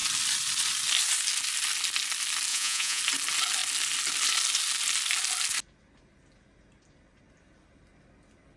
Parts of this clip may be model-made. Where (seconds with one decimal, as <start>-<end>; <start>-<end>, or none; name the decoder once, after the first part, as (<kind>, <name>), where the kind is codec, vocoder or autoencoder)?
2.5-3.0 (vocoder, Vocos)